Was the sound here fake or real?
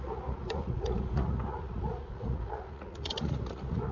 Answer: fake